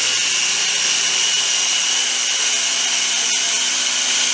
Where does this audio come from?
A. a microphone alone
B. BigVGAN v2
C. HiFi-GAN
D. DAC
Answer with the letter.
A